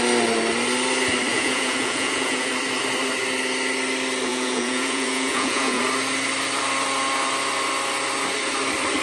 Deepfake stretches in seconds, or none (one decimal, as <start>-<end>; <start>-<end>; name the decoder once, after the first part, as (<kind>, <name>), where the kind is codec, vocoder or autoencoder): 1.3-2.5 (vocoder, Vocos); 4.3-5.8